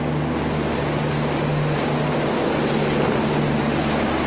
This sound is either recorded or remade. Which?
recorded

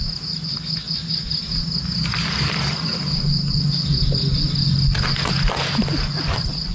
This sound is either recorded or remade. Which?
recorded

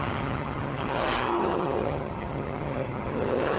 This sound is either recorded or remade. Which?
remade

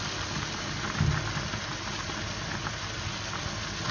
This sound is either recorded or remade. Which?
recorded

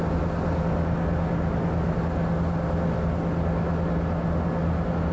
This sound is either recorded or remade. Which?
recorded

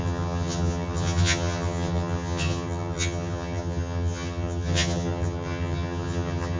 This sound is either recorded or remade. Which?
remade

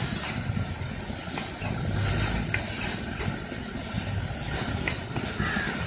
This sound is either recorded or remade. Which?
recorded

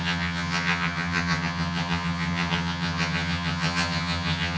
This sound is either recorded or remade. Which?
remade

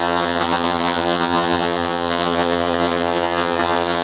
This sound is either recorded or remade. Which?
remade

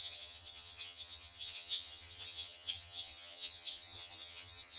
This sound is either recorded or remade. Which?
remade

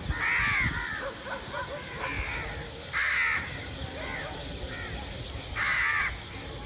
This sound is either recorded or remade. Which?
recorded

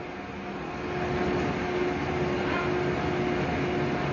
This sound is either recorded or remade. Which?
recorded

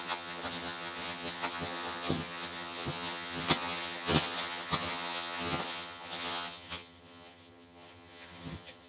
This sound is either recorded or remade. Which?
remade